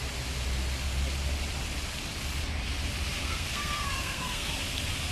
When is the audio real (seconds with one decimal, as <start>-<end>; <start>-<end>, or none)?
0.0-3.2; 4.5-5.1